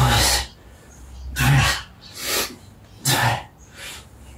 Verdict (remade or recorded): recorded